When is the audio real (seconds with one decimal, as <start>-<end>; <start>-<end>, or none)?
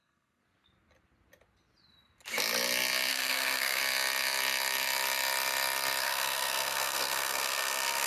0.4-3.1; 3.8-6.0